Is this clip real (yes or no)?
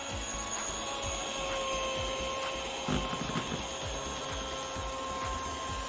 yes